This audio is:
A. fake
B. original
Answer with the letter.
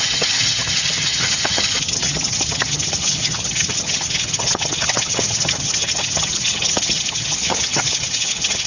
A